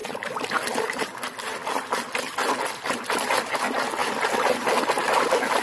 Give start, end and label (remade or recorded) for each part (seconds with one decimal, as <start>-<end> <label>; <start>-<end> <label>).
0.0-5.6 recorded